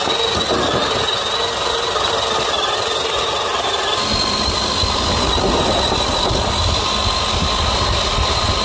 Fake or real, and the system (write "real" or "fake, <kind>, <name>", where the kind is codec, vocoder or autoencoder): real